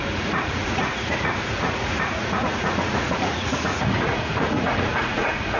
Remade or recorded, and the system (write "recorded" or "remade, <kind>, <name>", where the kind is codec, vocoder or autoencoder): remade, vocoder, Vocos